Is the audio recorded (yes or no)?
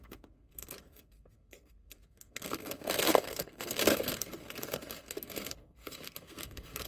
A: no